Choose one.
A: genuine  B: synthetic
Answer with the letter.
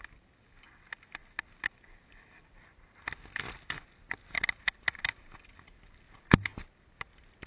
A